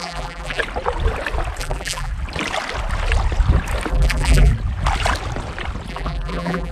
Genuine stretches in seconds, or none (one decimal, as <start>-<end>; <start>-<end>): 0.6-1.6; 2.1-3.9; 4.5-5.9